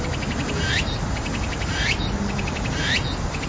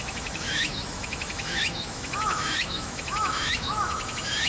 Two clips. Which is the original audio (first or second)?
first